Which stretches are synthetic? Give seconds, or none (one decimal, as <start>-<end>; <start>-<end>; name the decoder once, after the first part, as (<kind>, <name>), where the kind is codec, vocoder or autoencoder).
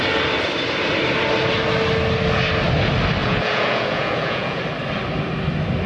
3.2-4.6 (vocoder, Vocos)